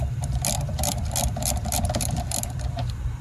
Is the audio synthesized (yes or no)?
yes